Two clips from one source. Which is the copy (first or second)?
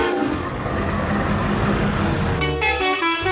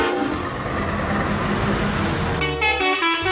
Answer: first